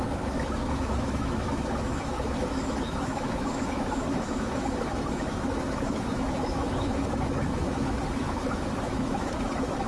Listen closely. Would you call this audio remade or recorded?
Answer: remade